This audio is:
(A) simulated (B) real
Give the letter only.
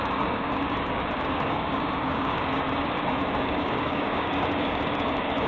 A